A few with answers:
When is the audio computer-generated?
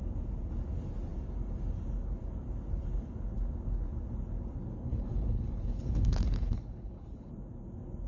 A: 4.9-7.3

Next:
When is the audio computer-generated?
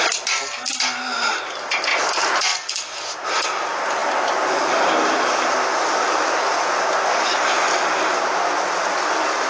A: none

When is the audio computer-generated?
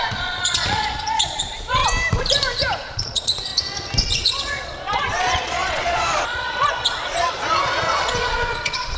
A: 0.0-1.8; 2.9-3.5; 4.0-9.0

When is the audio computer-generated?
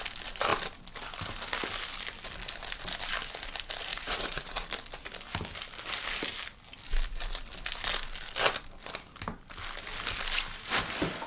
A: 3.9-4.7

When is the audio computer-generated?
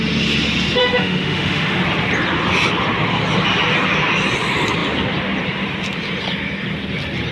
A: 0.8-1.8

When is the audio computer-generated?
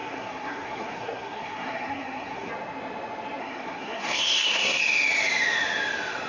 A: 0.0-2.5; 3.4-4.8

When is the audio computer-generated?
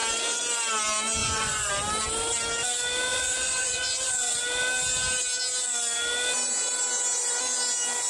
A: 1.2-1.7; 3.1-4.4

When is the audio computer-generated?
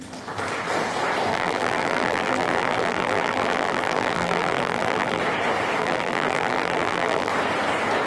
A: 1.3-5.2; 5.8-7.3